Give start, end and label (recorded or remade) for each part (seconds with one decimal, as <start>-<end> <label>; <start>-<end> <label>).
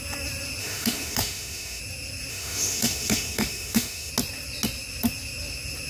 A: 0.0-0.6 recorded; 0.6-1.8 remade; 1.8-2.3 recorded; 2.3-4.1 remade; 4.1-5.9 recorded